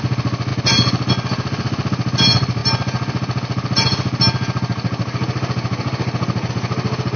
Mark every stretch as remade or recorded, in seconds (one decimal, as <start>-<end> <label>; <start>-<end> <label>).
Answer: 0.0-7.2 recorded